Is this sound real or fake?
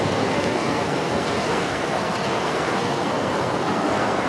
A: fake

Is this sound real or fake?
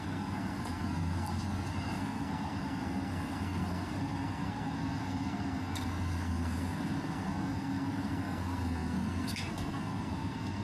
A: fake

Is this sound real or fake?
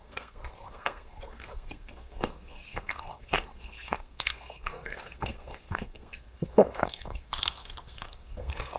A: fake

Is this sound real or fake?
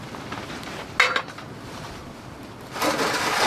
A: real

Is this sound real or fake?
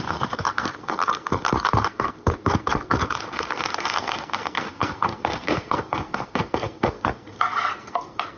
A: fake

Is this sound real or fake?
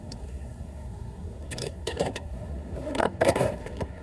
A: fake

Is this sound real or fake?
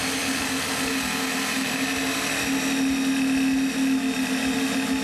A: real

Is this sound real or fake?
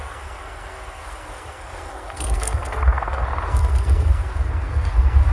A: fake